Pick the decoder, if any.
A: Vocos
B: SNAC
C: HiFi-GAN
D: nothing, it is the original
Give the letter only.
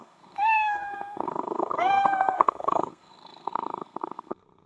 B